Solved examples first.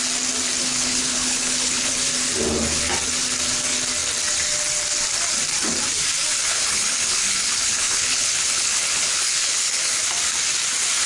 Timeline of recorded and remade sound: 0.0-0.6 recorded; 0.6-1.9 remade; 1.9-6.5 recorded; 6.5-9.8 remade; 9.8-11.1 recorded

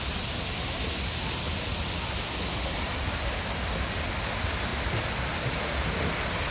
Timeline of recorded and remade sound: 0.0-6.5 recorded

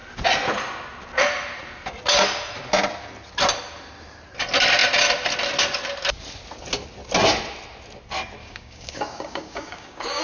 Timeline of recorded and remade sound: 0.0-8.4 recorded; 8.4-10.2 remade

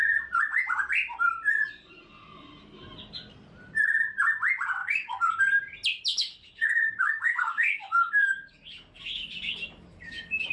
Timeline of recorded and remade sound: 0.0-4.8 recorded; 4.8-5.4 remade; 5.4-6.1 recorded; 6.1-10.5 remade

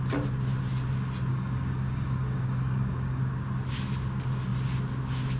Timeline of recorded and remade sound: 0.0-1.3 recorded; 1.3-3.2 remade; 3.2-5.4 recorded

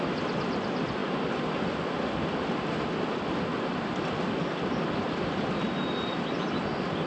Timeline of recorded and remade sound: 0.0-7.1 recorded

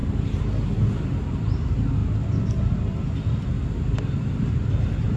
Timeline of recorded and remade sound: 0.0-1.2 recorded; 1.2-2.0 remade; 2.0-4.8 recorded; 4.8-5.2 remade

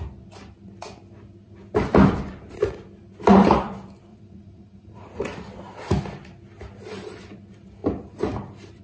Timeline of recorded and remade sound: 0.0-4.1 recorded; 4.1-5.2 remade; 5.2-8.8 recorded